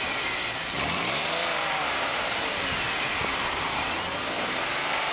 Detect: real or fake fake